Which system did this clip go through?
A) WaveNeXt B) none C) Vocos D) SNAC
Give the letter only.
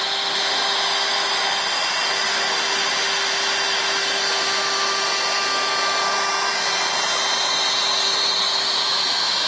B